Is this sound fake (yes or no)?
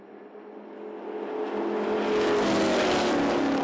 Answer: no